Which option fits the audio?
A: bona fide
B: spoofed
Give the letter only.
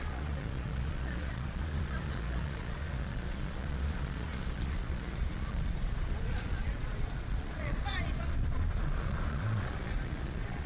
B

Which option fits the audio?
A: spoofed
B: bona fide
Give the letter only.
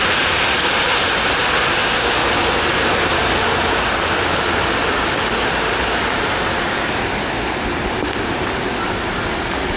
B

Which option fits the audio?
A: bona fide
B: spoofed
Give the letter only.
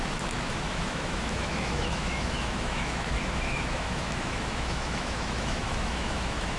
B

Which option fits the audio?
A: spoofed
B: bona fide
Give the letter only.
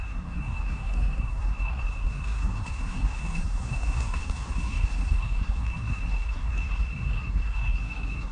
A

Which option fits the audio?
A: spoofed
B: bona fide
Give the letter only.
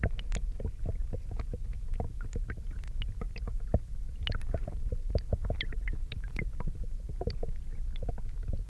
B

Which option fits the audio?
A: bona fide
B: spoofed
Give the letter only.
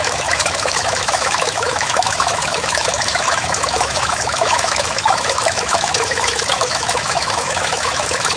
B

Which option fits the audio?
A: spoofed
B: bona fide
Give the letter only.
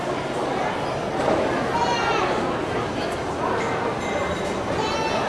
B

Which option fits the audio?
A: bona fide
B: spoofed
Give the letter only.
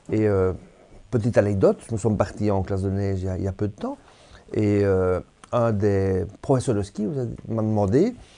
A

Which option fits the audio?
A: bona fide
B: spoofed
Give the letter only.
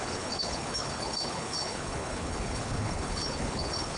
B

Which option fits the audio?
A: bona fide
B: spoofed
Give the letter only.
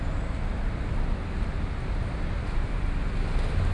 A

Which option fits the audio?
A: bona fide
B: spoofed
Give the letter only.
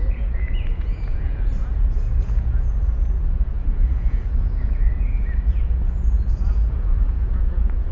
B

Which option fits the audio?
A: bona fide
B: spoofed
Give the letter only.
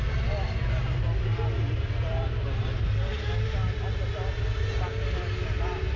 A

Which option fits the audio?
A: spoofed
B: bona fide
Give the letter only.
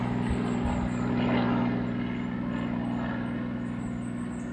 B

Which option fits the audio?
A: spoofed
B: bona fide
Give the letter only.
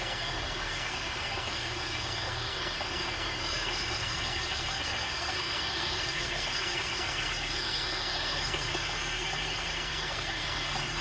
A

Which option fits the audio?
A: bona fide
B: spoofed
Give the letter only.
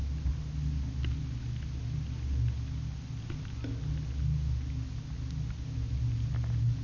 A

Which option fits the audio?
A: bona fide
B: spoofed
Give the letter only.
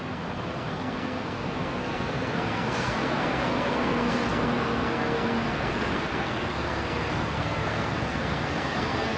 B